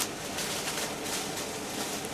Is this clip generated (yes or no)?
no